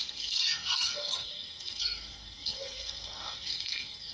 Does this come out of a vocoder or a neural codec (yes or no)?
yes